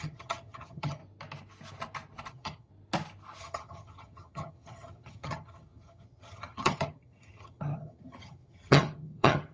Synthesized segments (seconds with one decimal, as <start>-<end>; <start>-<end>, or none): 0.0-1.0; 2.3-2.7; 3.4-9.5